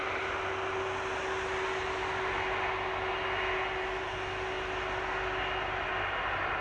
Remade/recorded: recorded